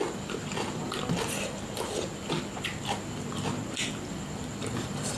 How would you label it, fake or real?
real